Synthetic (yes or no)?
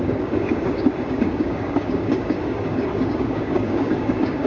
yes